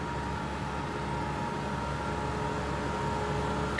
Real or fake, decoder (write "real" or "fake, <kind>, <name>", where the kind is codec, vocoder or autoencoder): real